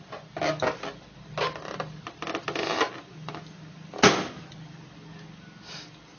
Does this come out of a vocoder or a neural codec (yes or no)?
no